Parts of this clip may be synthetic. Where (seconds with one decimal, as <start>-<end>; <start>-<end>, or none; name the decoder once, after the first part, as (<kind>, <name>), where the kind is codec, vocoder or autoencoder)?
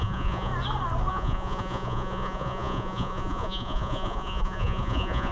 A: 0.0-0.5 (vocoder, Vocos); 1.1-5.3